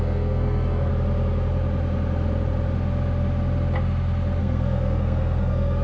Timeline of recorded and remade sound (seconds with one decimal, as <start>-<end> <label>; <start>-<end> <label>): 0.0-0.9 remade; 0.9-4.4 recorded; 4.4-5.8 remade